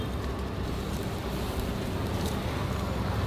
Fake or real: real